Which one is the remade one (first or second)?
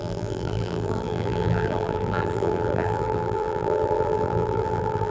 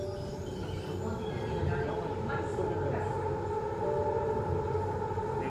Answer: first